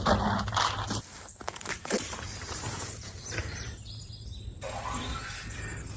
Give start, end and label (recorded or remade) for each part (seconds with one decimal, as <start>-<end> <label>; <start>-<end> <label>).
0.0-1.1 recorded; 1.1-4.1 remade; 4.1-6.0 recorded

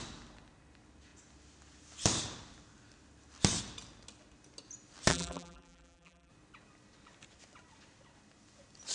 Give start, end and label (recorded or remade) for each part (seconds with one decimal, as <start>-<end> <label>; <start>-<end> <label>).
0.0-5.1 recorded; 5.1-6.3 remade; 6.3-8.9 recorded

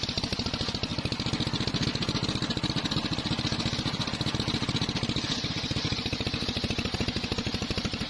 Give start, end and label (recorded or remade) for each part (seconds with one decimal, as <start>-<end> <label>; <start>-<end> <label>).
0.0-8.1 recorded